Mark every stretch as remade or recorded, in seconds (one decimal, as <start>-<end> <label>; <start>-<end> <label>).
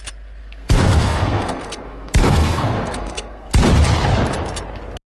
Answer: 0.0-0.4 recorded; 0.4-3.5 remade; 3.5-5.1 recorded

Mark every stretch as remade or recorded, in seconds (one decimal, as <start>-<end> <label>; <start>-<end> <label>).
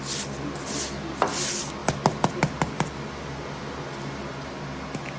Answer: 0.0-5.2 recorded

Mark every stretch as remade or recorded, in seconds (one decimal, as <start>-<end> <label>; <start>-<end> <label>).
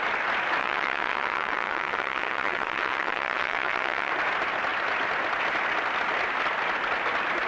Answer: 0.0-0.6 recorded; 0.6-4.1 remade; 4.1-7.5 recorded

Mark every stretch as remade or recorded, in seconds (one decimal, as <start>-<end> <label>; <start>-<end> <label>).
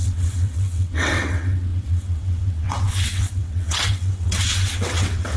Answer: 0.0-5.4 remade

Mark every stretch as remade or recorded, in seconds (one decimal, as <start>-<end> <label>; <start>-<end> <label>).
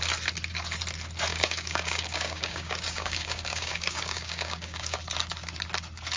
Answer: 0.0-1.3 recorded; 1.3-5.0 remade; 5.0-6.2 recorded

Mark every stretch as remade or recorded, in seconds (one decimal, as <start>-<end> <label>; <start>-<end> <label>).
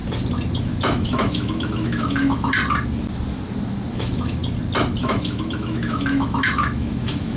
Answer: 0.0-0.6 recorded; 0.6-2.6 remade; 2.6-3.9 recorded; 3.9-4.4 remade; 4.4-5.0 recorded; 5.0-7.4 remade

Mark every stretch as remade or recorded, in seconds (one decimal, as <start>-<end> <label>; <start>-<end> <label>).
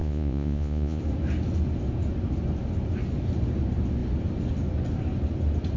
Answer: 0.0-1.0 remade; 1.0-5.8 recorded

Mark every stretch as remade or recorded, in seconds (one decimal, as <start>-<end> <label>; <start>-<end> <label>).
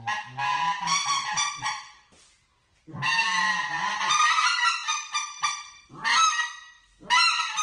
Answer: 0.0-0.5 recorded; 0.5-3.5 remade; 3.5-4.8 recorded; 4.8-6.4 remade; 6.4-7.6 recorded